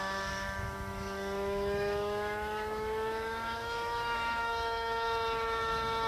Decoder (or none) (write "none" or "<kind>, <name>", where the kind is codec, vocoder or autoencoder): autoencoder, DAC-VAE